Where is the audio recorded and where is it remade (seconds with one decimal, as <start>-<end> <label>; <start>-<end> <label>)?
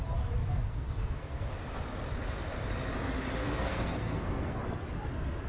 0.0-0.4 recorded; 0.4-1.5 remade; 1.5-3.4 recorded; 3.4-4.6 remade; 4.6-5.5 recorded